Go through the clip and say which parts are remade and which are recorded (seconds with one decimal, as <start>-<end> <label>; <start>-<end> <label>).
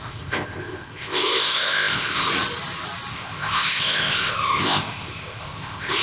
0.0-2.3 remade; 2.3-3.1 recorded; 3.1-6.0 remade